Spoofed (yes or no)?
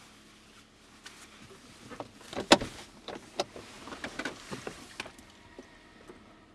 no